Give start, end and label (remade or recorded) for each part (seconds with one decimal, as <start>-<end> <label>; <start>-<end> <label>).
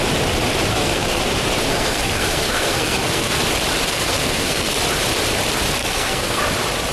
0.0-0.7 recorded; 0.7-1.2 remade; 1.2-1.7 recorded; 1.7-3.3 remade; 3.3-3.9 recorded; 3.9-4.7 remade; 4.7-5.8 recorded; 5.8-6.4 remade; 6.4-6.9 recorded